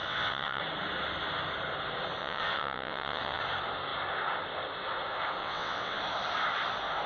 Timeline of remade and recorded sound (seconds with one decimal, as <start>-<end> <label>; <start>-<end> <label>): 0.0-0.6 remade; 0.6-2.2 recorded; 2.2-3.4 remade; 3.4-5.4 recorded; 5.4-6.0 remade; 6.0-7.1 recorded